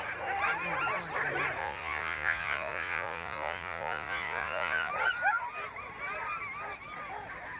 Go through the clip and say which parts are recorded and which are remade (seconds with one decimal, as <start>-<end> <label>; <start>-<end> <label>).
0.0-1.6 recorded; 1.6-4.9 remade; 4.9-7.6 recorded